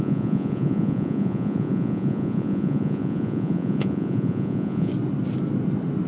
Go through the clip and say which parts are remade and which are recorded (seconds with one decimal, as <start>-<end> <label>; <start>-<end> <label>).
0.0-4.9 remade; 4.9-6.1 recorded